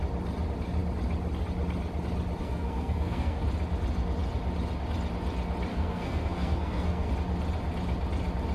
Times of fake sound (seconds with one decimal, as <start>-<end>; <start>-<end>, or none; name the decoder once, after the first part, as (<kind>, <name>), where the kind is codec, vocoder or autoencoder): 2.4-3.4 (codec, SNAC); 5.7-7.1